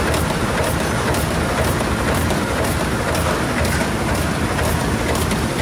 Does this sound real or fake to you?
fake